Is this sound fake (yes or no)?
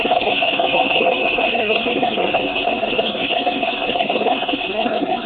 yes